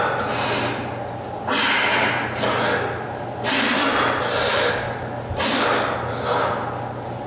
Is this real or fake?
real